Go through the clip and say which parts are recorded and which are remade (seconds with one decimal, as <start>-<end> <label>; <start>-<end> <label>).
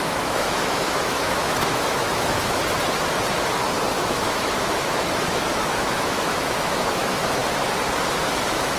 0.0-2.6 remade; 2.6-3.9 recorded; 3.9-7.4 remade; 7.4-8.3 recorded; 8.3-8.8 remade